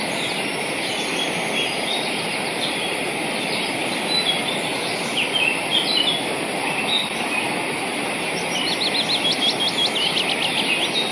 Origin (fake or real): real